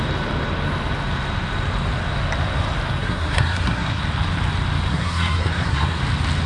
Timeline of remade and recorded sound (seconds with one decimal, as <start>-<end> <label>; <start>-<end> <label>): 0.0-3.0 recorded; 3.0-4.0 remade; 4.0-4.9 recorded; 4.9-6.0 remade; 6.0-6.5 recorded